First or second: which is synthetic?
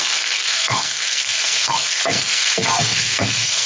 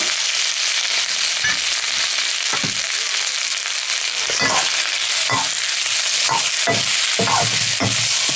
first